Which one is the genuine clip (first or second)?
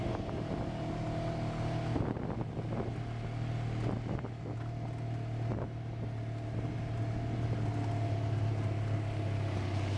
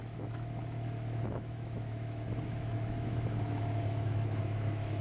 first